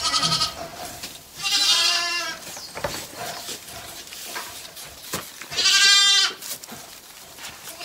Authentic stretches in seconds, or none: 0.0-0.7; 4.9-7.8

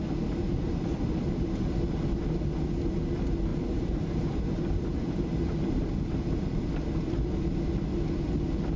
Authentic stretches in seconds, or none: 0.0-0.4; 1.0-3.5; 5.9-8.8

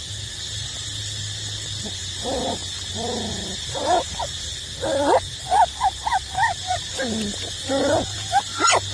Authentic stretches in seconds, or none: 0.0-7.8; 8.4-8.9

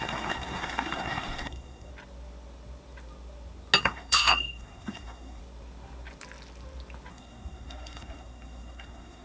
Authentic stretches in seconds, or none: 1.9-3.8; 5.4-7.1

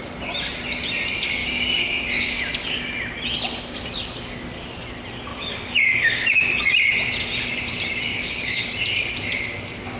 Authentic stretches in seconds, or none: 0.0-1.4; 2.4-5.3; 6.7-8.1; 8.7-10.0

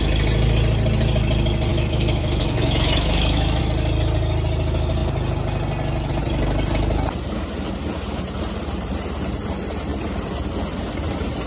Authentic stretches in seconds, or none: 0.0-1.7; 3.6-11.5